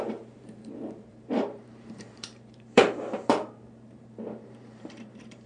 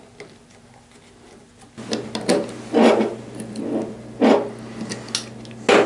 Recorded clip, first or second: second